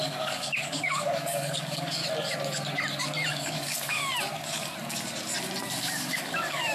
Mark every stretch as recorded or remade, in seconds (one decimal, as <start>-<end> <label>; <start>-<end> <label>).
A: 0.0-2.0 remade; 2.0-3.3 recorded; 3.3-4.0 remade; 4.0-5.8 recorded; 5.8-6.7 remade